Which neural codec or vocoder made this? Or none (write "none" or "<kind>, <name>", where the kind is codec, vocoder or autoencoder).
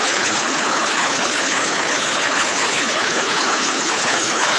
codec, HILCodec